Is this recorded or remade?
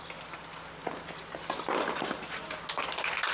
recorded